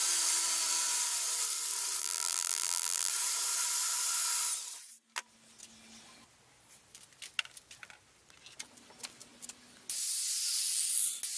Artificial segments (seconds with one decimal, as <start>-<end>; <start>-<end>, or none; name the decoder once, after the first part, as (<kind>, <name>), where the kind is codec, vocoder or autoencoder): 2.0-3.1 (vocoder, BigVGAN v2)

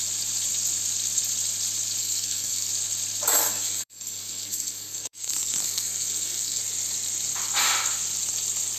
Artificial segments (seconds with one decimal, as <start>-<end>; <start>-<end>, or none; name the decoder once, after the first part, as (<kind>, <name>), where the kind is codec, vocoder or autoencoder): 2.0-2.7 (codec, SNAC); 3.4-6.6

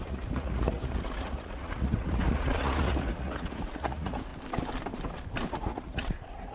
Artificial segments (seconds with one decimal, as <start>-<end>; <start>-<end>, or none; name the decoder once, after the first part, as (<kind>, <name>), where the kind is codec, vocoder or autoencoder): 0.0-4.3 (vocoder, Vocos); 5.5-6.5

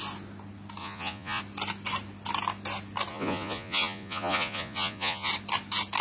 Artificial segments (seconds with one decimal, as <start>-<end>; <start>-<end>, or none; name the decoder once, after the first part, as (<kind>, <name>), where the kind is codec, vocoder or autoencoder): 0.8-1.4 (vocoder, Vocos); 3.1-5.3

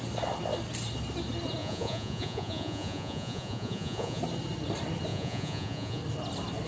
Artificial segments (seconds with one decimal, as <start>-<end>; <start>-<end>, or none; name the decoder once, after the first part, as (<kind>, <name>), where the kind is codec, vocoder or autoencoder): 1.6-4.2 (vocoder, Vocos); 5.1-6.0